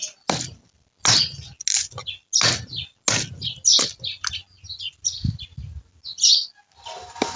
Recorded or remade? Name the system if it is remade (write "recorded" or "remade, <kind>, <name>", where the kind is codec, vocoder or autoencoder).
recorded